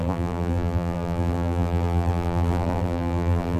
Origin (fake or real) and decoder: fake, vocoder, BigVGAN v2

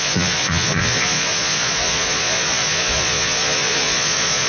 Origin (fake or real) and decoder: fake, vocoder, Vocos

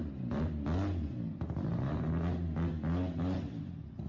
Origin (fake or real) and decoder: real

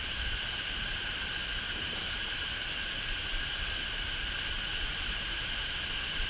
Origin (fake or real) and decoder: fake, vocoder, BigVGAN v2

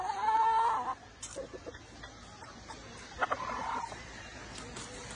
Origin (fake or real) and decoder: real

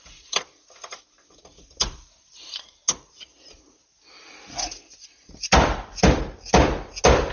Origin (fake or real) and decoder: real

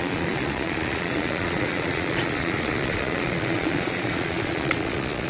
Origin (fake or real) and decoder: fake, vocoder, Vocos